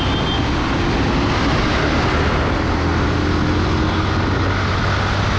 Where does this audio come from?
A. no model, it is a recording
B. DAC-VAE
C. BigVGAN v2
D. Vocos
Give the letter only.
A